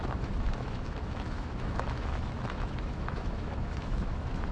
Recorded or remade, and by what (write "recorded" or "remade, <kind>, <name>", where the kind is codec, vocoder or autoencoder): remade, autoencoder, DAC-VAE